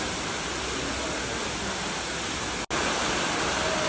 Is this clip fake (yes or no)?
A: no